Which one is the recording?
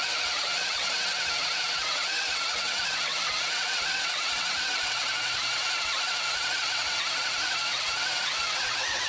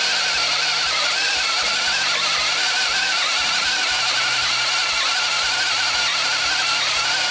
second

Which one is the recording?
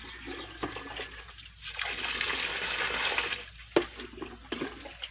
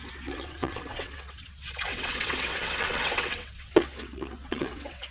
first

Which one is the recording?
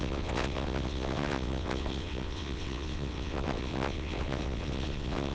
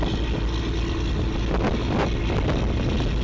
second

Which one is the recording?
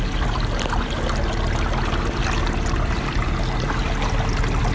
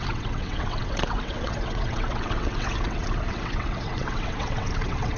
first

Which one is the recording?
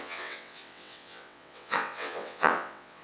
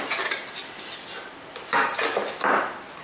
second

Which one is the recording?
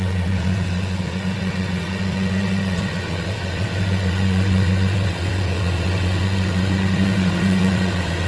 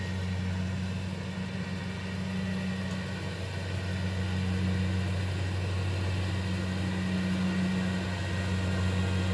second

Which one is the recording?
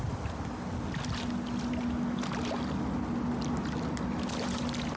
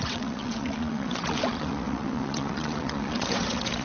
first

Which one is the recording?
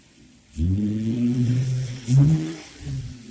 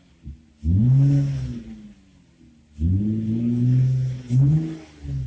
second